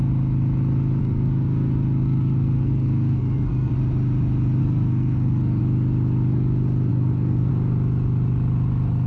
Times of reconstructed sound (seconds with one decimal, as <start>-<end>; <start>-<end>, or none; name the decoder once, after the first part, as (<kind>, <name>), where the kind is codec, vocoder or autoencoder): 1.0-3.7 (codec, SNAC); 4.6-5.6; 6.9-7.5